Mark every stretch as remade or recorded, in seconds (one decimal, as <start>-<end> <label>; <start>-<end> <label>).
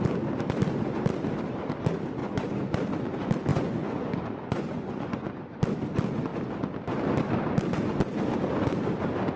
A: 0.0-2.2 recorded; 2.2-2.7 remade; 2.7-3.5 recorded; 3.5-5.3 remade; 5.3-9.4 recorded